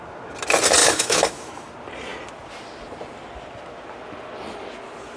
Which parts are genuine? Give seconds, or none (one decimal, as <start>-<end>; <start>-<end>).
0.0-0.8; 1.7-5.2